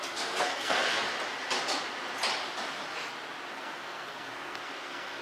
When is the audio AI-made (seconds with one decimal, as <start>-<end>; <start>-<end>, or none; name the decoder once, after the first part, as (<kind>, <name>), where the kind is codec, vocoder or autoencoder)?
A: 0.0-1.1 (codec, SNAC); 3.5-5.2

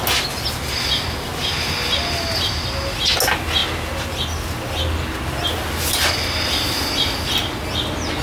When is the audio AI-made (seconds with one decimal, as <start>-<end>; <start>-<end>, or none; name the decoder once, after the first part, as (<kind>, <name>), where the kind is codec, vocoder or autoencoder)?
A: none

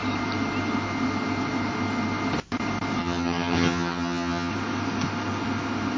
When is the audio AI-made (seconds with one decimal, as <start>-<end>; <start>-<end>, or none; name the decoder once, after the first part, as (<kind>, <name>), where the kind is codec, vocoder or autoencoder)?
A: 3.0-4.5 (vocoder, HiFi-GAN)

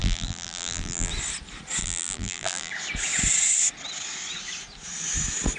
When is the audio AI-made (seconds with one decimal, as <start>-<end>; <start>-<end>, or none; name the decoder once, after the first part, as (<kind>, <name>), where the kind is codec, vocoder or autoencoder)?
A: 0.0-1.1 (vocoder, BigVGAN v2); 1.8-2.7

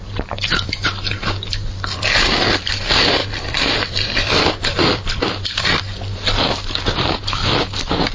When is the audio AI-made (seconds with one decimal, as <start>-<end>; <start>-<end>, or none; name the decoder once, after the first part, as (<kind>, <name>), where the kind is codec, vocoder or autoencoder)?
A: 3.2-5.8 (vocoder, BigVGAN v2)

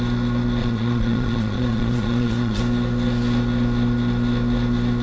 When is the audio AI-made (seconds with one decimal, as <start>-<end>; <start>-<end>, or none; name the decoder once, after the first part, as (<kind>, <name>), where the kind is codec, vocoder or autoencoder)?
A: 0.6-2.6 (vocoder, Vocos)